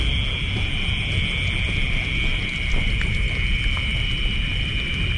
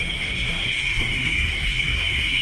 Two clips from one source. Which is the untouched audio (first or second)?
first